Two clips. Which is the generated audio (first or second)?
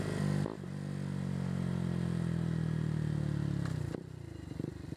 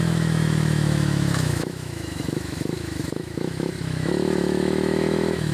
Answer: second